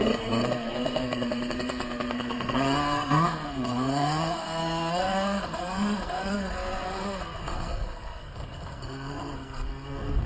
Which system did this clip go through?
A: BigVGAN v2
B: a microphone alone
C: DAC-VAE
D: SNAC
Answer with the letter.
D